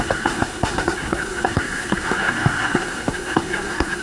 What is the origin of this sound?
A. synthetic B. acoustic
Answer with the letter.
A